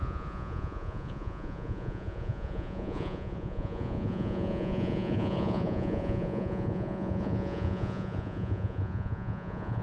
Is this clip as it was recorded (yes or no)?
no